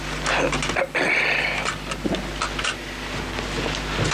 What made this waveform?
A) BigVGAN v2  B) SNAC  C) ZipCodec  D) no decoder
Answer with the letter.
D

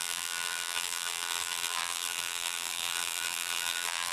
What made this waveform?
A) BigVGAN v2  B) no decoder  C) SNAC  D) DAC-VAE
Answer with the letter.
A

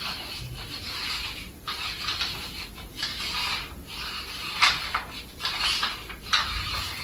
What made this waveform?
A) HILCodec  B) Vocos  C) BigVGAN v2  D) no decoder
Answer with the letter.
D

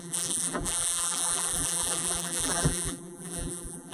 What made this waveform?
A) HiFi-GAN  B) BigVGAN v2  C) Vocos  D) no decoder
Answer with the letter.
B